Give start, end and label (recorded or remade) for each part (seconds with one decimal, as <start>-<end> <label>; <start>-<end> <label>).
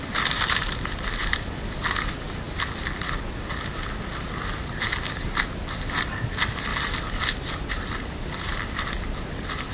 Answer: 0.0-9.7 recorded